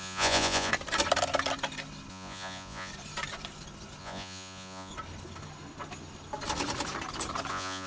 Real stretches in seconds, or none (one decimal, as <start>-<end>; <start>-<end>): 0.7-2.1; 2.9-4.0; 4.9-7.5